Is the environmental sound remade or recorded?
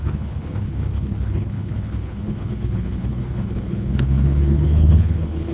remade